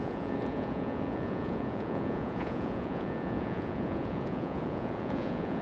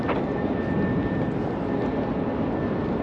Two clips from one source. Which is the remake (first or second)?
first